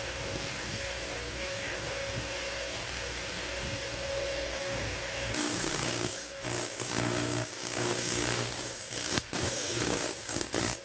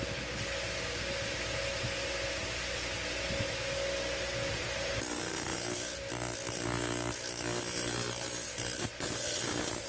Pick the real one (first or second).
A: second